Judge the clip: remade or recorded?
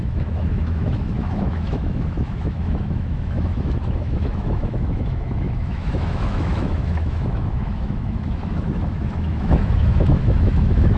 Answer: remade